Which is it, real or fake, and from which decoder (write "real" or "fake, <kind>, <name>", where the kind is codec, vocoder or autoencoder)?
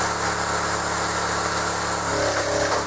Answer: real